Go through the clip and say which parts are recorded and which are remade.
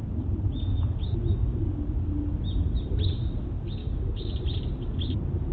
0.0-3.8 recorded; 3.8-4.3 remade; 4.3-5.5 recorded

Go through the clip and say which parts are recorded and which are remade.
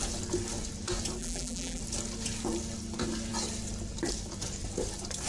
0.0-1.2 recorded; 1.2-1.8 remade; 1.8-5.3 recorded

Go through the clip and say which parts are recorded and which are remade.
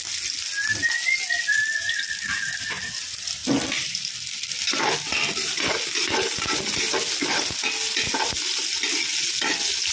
0.0-3.4 recorded; 3.4-6.6 remade; 6.6-9.9 recorded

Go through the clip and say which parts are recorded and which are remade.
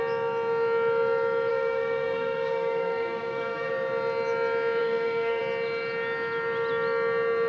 0.0-1.5 recorded; 1.5-3.7 remade; 3.7-4.8 recorded; 4.8-5.4 remade; 5.4-7.5 recorded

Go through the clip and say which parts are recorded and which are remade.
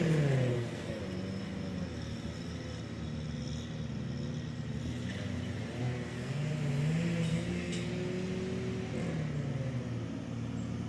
0.0-0.5 recorded; 0.5-1.0 remade; 1.0-5.8 recorded; 5.8-6.5 remade; 6.5-7.3 recorded; 7.3-7.9 remade; 7.9-10.9 recorded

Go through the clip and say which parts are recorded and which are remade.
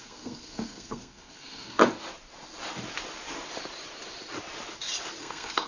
0.0-1.8 remade; 1.8-5.2 recorded; 5.2-5.7 remade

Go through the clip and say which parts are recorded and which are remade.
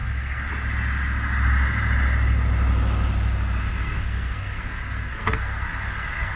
0.0-0.5 remade; 0.5-3.7 recorded; 3.7-6.4 remade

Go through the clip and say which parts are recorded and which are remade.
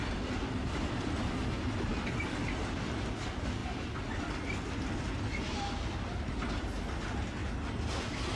0.0-8.4 recorded